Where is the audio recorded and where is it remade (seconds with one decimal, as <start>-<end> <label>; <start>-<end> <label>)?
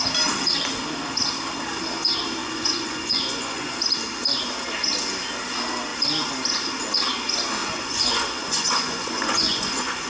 0.0-2.4 recorded; 2.4-3.7 remade; 3.7-7.6 recorded; 7.6-10.1 remade